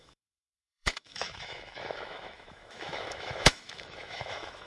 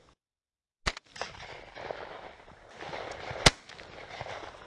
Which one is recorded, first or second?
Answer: second